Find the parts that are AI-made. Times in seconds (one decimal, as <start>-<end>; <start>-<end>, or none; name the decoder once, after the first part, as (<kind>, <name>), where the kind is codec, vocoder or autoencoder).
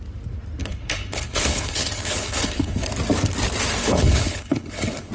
0.6-2.9 (codec, HILCodec); 3.8-5.1